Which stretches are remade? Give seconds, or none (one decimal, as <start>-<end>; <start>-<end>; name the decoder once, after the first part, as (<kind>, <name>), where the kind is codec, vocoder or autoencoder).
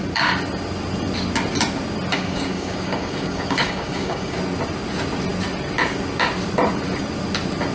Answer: 2.1-4.4 (codec, DAC)